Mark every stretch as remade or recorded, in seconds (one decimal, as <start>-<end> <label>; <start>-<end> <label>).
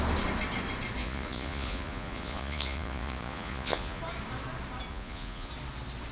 0.0-1.0 recorded; 1.0-4.0 remade; 4.0-4.9 recorded; 4.9-5.5 remade; 5.5-6.1 recorded